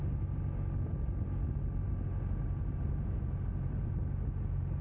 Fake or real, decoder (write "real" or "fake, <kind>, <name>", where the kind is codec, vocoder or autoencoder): real